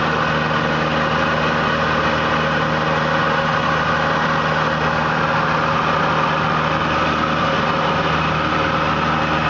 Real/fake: real